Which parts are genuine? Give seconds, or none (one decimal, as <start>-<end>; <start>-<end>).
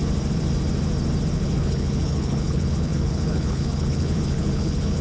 0.0-1.3